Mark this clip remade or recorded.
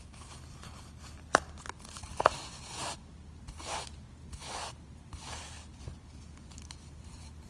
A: recorded